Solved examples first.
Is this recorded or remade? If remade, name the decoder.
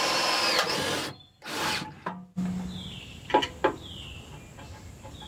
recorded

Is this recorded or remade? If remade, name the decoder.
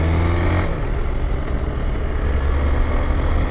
recorded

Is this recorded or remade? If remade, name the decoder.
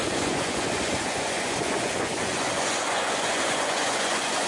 remade, vocoder, Vocos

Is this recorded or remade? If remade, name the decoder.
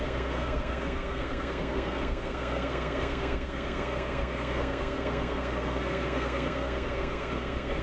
remade, codec, SNAC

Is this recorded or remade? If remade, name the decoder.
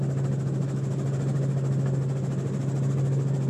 recorded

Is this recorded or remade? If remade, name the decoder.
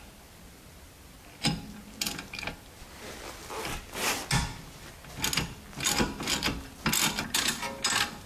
recorded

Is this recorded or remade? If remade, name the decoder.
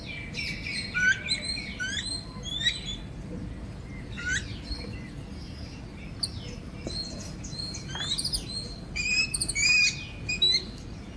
recorded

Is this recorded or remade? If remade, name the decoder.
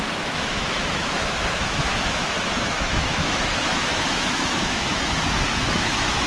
remade, autoencoder, DAC-VAE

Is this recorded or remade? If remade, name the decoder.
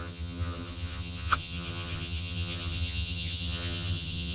remade, vocoder, HiFi-GAN